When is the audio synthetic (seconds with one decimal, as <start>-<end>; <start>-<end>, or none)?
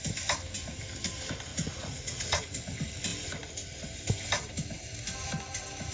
1.5-2.4